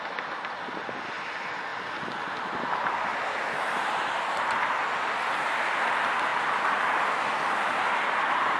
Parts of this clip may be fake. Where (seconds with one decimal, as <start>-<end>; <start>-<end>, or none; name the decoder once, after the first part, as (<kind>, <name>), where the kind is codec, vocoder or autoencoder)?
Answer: 3.1-4.5 (vocoder, BigVGAN v2)

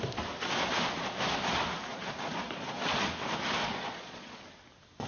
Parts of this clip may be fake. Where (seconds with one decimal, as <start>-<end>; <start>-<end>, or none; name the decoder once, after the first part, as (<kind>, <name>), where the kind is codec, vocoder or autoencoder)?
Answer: 1.9-3.1 (vocoder, Vocos); 3.6-4.4

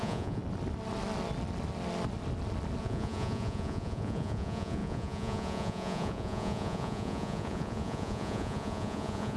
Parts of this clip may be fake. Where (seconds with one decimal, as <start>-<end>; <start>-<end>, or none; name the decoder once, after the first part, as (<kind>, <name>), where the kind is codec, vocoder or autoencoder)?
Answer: 0.0-0.4 (vocoder, Vocos); 2.8-9.4

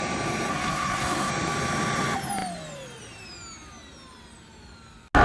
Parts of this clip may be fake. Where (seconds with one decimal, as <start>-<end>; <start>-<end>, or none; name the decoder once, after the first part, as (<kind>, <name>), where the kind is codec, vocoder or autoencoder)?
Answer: 0.5-1.3 (codec, SNAC)